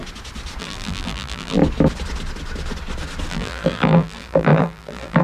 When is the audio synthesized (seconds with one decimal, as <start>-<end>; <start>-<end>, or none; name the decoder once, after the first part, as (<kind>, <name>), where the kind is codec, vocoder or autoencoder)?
0.6-1.6 (vocoder, BigVGAN v2); 3.3-5.2